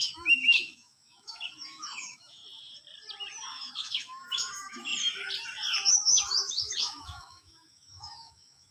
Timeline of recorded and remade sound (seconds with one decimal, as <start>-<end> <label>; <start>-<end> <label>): 0.0-2.4 remade; 2.4-3.5 recorded; 3.5-4.9 remade; 4.9-5.9 recorded; 5.9-8.7 remade